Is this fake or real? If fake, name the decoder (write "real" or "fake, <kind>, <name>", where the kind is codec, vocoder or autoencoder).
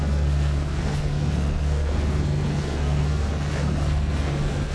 fake, codec, SNAC